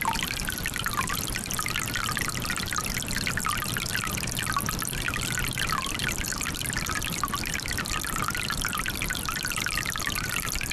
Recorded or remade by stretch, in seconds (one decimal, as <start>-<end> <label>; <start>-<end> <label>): 0.0-10.7 recorded